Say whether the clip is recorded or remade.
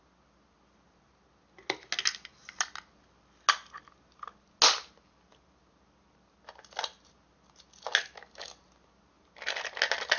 recorded